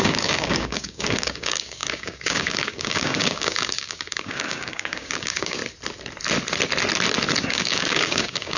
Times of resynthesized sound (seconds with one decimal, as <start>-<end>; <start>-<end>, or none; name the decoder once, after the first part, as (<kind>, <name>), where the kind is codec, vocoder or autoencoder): 0.0-5.6 (codec, DAC); 7.5-8.6